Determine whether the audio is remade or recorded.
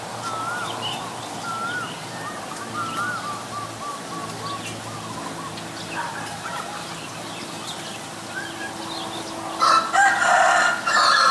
recorded